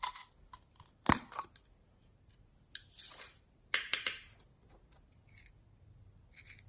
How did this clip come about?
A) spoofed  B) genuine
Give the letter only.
B